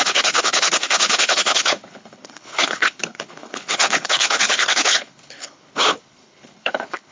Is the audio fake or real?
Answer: fake